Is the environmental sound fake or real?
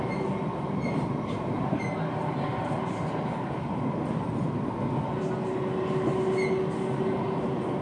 real